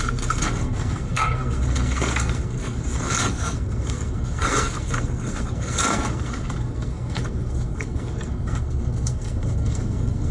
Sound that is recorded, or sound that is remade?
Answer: remade